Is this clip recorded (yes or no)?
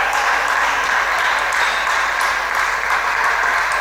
yes